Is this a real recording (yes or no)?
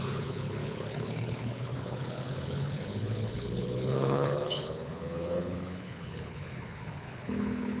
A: no